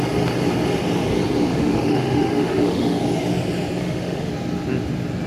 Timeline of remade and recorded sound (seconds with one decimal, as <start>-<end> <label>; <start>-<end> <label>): 0.0-1.5 recorded; 1.5-3.0 remade; 3.0-3.8 recorded; 3.8-4.3 remade; 4.3-5.3 recorded